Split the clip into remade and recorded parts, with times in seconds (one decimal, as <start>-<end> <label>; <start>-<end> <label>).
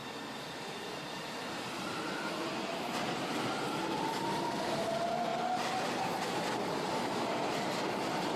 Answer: 0.0-8.4 recorded